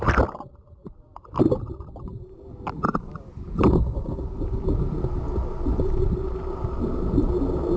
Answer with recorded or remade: recorded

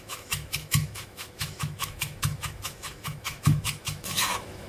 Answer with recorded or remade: remade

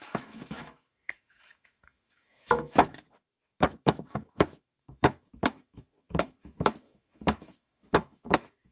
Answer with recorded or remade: remade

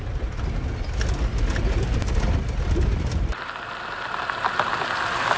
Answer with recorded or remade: recorded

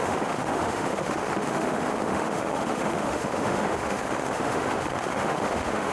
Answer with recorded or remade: remade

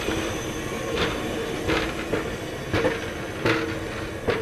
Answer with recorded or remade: recorded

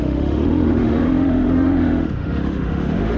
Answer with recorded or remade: remade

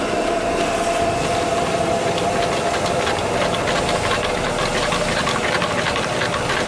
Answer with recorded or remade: recorded